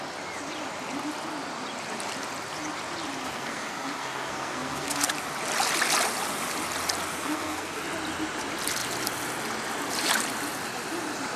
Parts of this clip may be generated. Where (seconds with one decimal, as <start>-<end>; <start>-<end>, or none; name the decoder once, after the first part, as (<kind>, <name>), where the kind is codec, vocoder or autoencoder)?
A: 3.2-5.1 (codec, SNAC); 7.1-7.8